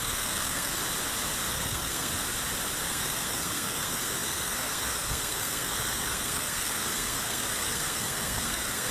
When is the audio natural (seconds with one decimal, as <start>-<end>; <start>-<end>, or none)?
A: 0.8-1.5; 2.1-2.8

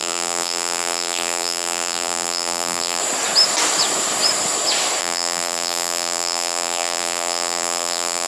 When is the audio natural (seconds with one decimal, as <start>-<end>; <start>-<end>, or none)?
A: 3.0-5.0

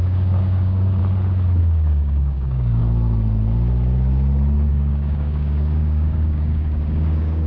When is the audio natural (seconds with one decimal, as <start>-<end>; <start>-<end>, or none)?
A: 1.0-1.6; 2.8-4.7

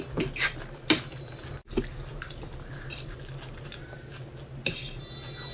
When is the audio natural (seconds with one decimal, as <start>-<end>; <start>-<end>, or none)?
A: 0.0-5.5

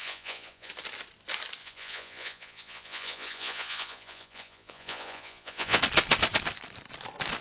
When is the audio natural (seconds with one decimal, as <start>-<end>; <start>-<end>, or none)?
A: 0.7-1.6; 5.8-7.4